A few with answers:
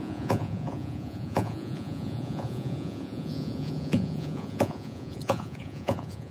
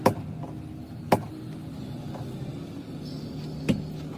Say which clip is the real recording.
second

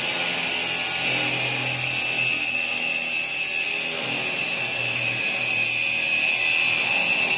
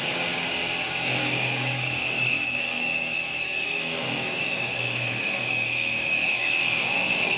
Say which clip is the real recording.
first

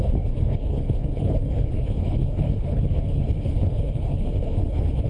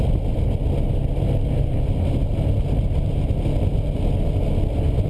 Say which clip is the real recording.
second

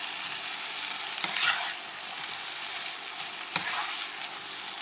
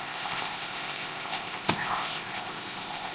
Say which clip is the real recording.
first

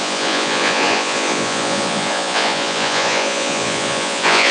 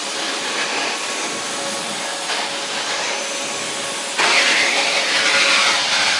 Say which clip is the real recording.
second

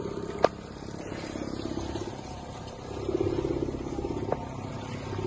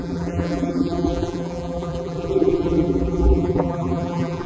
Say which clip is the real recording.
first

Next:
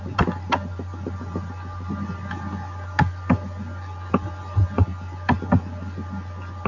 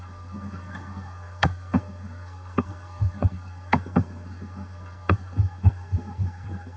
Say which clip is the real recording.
first